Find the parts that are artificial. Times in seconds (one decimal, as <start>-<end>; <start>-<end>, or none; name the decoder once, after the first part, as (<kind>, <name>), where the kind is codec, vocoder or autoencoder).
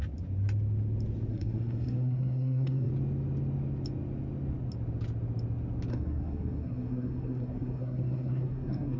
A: 1.3-2.9 (codec, SNAC); 5.9-9.0